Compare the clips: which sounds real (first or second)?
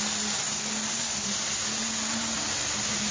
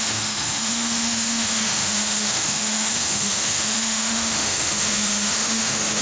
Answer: first